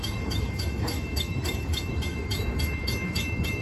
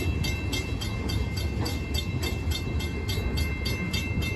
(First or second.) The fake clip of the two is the first